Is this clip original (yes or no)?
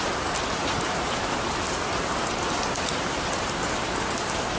yes